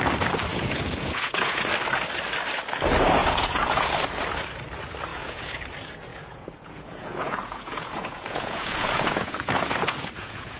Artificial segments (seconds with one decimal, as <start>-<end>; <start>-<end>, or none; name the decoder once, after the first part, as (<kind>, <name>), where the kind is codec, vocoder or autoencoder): 0.5-1.6 (vocoder, Vocos); 3.2-3.9; 5.1-5.6; 6.1-10.6